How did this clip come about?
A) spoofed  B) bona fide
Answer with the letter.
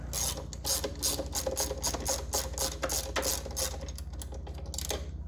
B